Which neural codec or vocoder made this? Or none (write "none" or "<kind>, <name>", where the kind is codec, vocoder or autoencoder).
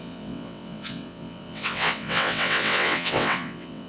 vocoder, WaveNeXt